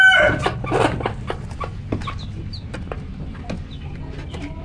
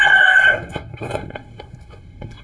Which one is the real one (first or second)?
first